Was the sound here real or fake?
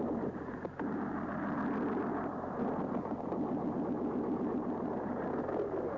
real